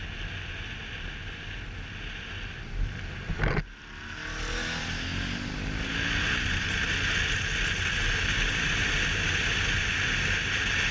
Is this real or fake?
real